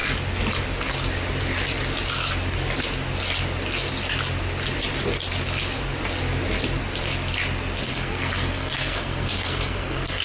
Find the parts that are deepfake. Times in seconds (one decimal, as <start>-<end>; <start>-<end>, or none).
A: 7.9-10.2